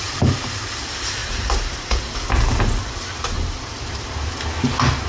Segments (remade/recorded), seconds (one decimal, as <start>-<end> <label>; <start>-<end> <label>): 0.0-1.2 recorded; 1.2-4.3 remade; 4.3-5.1 recorded